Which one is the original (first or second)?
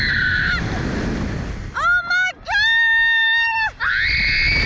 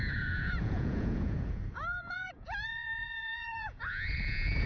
first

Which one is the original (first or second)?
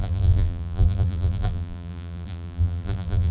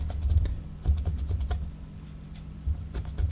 second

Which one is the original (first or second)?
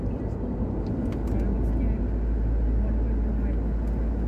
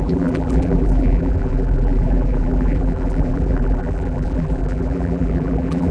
first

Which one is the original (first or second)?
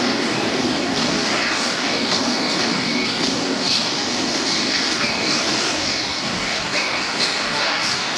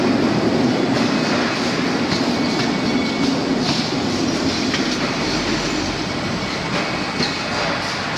second